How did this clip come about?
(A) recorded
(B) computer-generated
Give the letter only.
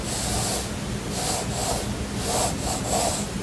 A